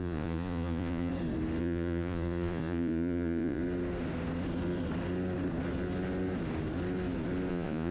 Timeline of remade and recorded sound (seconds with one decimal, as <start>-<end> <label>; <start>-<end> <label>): 0.0-1.1 remade; 1.1-1.6 recorded; 1.6-3.6 remade; 3.6-7.5 recorded; 7.5-7.9 remade